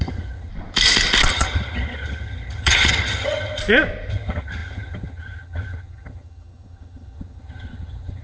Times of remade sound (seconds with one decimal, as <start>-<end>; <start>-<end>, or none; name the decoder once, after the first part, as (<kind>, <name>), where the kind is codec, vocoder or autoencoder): 0.0-0.5 (vocoder, HiFi-GAN); 1.3-3.6; 4.1-8.2